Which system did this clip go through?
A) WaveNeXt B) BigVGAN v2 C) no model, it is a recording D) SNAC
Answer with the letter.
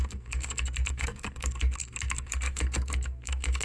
D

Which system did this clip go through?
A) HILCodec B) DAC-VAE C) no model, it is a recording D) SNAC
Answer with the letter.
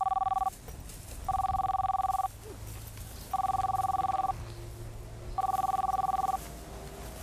C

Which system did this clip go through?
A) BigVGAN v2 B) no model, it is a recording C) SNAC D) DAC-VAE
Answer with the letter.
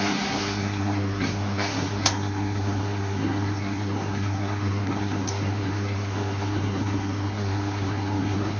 C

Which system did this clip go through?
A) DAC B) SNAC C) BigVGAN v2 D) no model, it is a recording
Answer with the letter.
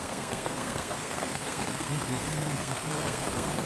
B